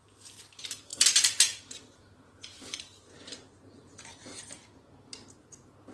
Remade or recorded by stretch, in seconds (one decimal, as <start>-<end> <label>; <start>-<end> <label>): 0.0-0.9 recorded; 0.9-4.4 remade; 4.4-5.9 recorded